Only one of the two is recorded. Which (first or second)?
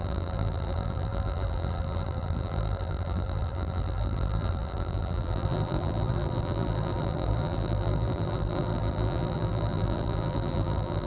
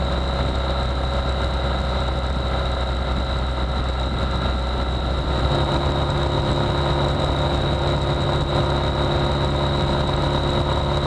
second